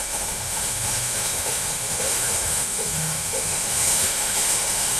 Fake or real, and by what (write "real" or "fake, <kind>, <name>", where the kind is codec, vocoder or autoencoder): fake, autoencoder, DAC-VAE